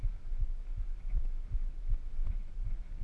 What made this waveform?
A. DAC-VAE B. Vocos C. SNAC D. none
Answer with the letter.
D